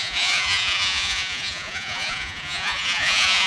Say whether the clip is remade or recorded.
remade